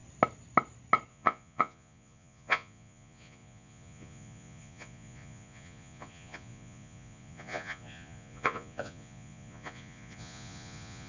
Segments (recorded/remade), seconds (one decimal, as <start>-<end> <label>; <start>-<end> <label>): 0.0-1.1 recorded; 1.1-11.1 remade